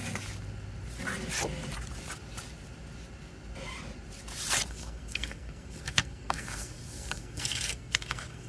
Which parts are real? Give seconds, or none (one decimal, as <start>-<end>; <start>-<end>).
0.0-4.7